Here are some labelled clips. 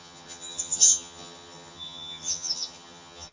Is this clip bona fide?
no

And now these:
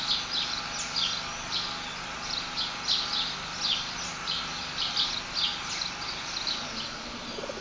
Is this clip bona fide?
yes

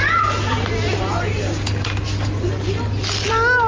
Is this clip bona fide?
yes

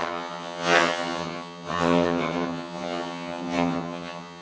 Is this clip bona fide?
no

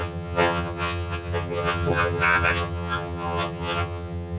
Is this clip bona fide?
no